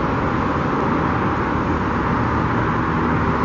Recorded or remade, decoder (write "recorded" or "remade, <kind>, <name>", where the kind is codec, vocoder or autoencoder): recorded